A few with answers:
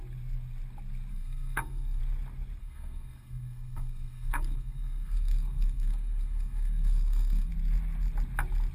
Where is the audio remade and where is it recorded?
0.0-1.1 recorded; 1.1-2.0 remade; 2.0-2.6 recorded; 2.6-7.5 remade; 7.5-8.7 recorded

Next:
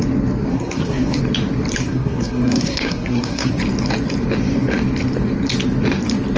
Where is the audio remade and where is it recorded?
0.0-0.5 recorded; 0.5-1.2 remade; 1.2-1.8 recorded; 1.8-3.6 remade; 3.6-6.4 recorded

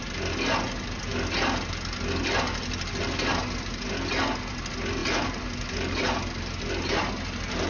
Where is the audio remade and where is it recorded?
0.0-7.7 recorded